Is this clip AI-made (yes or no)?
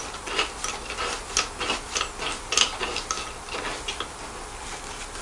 no